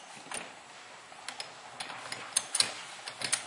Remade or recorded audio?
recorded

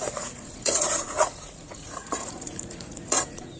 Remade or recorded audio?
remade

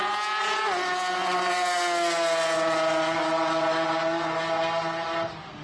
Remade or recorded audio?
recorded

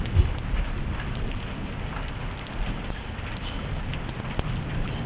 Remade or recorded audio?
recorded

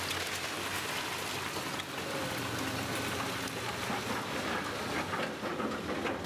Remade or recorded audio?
recorded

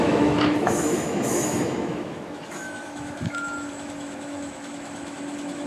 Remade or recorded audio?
remade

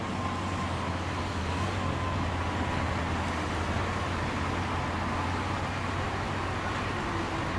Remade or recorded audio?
recorded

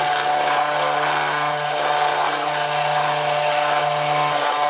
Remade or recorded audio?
recorded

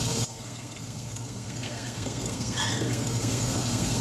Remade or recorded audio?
remade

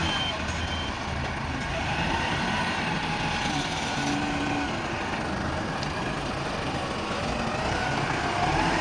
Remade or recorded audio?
recorded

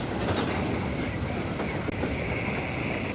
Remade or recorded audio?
recorded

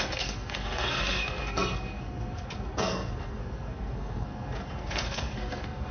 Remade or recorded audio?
remade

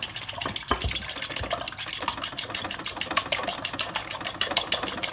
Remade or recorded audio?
recorded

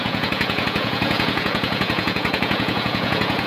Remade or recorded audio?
remade